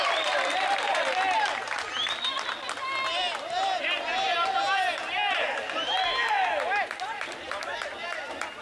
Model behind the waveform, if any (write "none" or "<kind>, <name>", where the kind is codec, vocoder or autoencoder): none